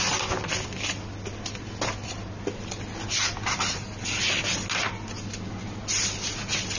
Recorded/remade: recorded